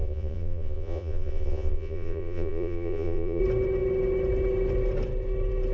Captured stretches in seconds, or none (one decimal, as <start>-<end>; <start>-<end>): 3.4-5.7